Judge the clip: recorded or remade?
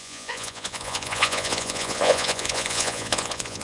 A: remade